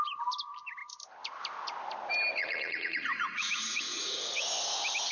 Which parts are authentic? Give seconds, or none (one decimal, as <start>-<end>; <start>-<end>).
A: 0.0-2.4; 4.5-5.1